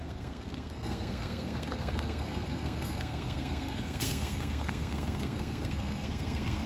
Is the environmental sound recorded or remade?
remade